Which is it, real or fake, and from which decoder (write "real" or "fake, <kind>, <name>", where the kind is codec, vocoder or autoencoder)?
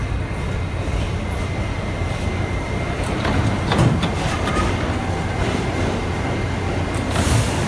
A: real